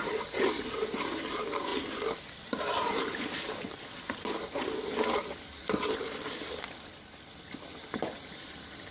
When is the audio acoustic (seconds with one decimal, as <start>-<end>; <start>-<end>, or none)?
0.0-1.7; 3.8-5.6; 7.5-8.9